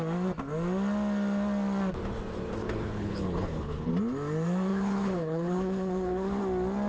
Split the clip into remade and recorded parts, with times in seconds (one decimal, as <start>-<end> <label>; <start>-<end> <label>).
0.0-2.6 recorded; 2.6-3.9 remade; 3.9-4.7 recorded; 4.7-6.4 remade; 6.4-6.9 recorded